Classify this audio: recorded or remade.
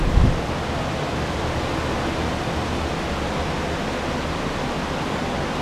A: recorded